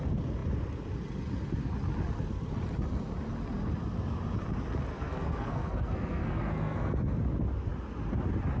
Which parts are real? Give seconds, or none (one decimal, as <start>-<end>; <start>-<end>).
0.0-4.9; 6.9-8.6